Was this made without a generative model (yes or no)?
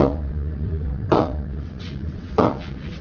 no